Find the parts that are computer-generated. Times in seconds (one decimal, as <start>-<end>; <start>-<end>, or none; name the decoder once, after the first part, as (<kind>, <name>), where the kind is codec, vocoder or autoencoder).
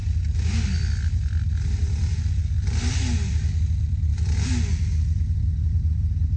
none